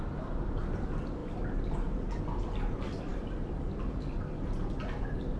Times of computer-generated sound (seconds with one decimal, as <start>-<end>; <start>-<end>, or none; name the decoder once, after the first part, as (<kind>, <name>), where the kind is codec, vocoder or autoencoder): none